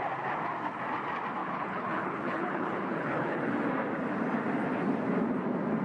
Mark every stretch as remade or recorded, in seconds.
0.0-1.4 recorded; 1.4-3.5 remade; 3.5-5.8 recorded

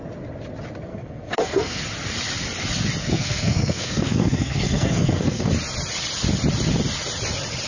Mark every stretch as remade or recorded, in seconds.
0.0-0.9 recorded; 0.9-1.8 remade; 1.8-3.0 recorded; 3.0-5.5 remade; 5.5-7.7 recorded

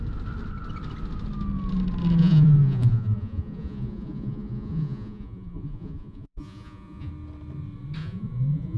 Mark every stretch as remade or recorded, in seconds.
0.0-2.2 recorded; 2.2-7.1 remade; 7.1-8.0 recorded; 8.0-8.8 remade